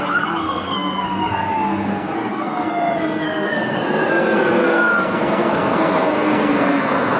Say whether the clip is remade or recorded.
remade